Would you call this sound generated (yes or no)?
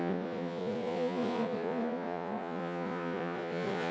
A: yes